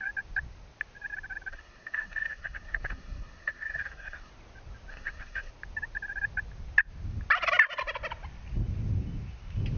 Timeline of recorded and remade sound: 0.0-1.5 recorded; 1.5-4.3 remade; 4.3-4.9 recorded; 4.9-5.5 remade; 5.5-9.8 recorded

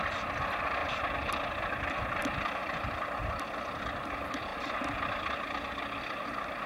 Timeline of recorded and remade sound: 0.0-6.7 recorded